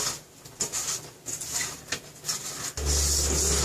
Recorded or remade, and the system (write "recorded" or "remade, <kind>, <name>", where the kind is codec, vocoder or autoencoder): recorded